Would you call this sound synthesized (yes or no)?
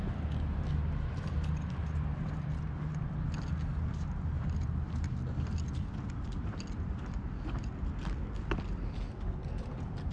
no